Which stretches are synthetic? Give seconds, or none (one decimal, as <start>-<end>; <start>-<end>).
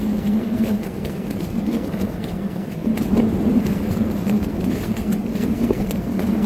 0.0-2.9; 3.6-6.5